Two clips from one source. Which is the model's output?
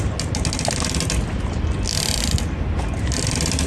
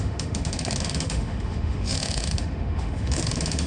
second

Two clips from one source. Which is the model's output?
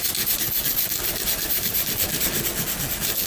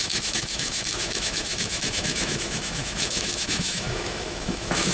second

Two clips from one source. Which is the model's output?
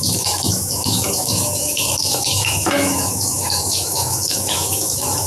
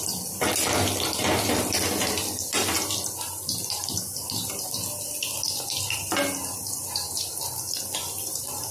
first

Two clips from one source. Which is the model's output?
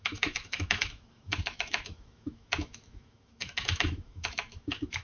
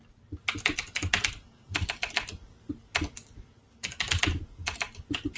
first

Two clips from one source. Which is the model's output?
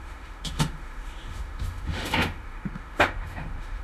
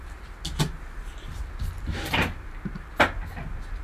first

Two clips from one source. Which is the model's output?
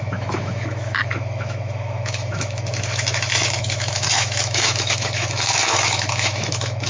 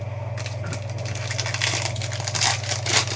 first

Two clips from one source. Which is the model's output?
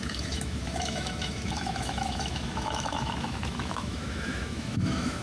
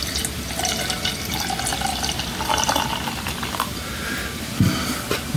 first